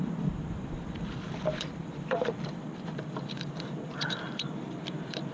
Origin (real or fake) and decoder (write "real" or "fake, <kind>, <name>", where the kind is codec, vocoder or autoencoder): fake, vocoder, BigVGAN v2